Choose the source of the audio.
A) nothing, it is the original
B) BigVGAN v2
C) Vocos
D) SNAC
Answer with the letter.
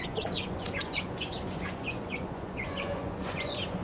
C